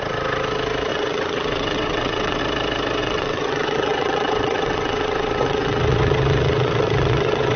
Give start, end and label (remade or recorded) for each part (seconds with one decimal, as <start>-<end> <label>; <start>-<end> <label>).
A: 0.0-0.9 recorded; 0.9-2.4 remade; 2.4-3.0 recorded; 3.0-7.6 remade